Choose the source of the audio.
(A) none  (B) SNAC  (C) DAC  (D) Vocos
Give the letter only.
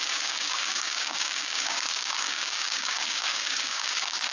C